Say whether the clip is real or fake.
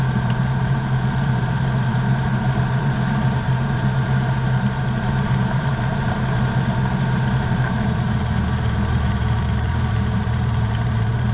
fake